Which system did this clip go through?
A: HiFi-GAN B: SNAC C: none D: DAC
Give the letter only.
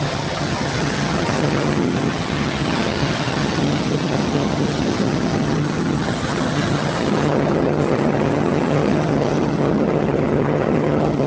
A